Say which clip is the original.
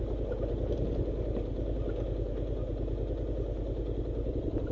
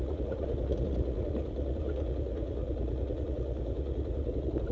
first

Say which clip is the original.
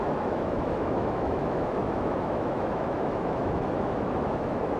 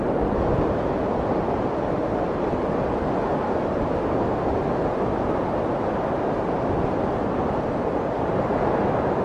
second